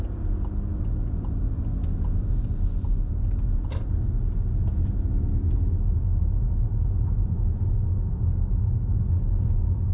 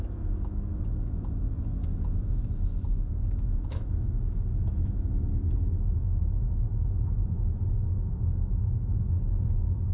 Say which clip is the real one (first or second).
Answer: first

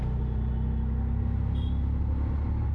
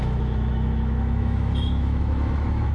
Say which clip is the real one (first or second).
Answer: first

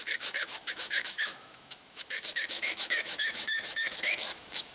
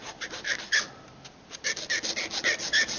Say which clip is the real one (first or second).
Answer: second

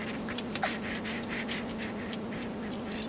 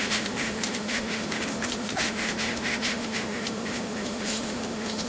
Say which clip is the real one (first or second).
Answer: first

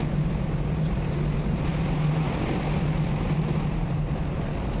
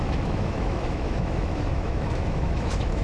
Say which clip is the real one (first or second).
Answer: first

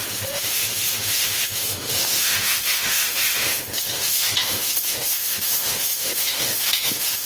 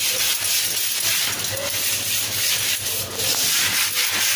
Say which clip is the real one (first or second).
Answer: second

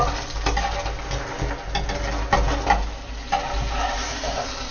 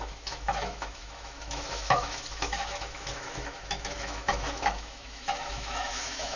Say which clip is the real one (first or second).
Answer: first